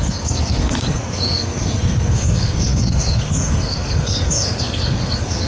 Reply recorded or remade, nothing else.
remade